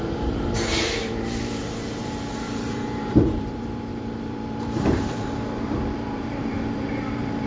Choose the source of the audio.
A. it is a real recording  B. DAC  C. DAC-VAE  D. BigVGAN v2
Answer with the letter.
D